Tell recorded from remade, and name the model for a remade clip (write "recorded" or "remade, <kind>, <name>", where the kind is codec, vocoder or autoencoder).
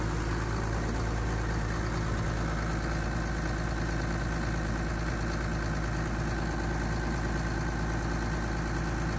recorded